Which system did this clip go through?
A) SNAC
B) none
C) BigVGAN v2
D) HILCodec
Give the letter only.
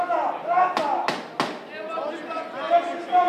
B